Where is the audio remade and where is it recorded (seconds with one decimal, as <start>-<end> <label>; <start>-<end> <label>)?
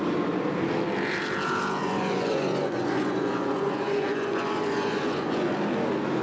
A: 0.0-1.8 recorded; 1.8-5.5 remade; 5.5-6.2 recorded